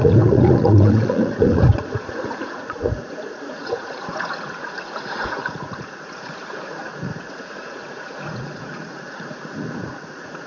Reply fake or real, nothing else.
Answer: fake